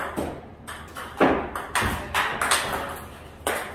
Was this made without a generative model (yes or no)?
yes